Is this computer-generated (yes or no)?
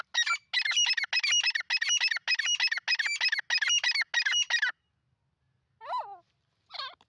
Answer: no